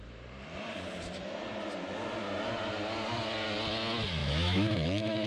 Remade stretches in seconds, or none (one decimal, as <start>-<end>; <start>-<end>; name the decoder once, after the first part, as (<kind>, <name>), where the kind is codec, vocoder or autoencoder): 4.2-5.3 (autoencoder, DAC-VAE)